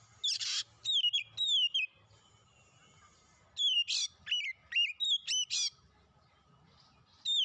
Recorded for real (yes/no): yes